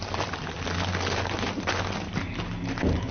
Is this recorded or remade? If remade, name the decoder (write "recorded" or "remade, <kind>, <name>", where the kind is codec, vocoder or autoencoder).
recorded